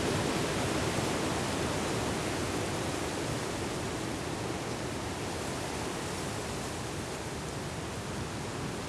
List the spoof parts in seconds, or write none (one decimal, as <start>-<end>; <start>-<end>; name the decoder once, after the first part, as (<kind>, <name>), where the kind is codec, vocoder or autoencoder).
none